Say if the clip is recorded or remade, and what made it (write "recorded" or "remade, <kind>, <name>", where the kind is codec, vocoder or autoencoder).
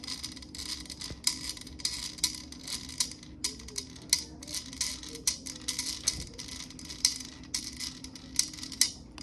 recorded